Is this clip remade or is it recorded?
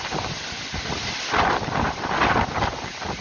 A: recorded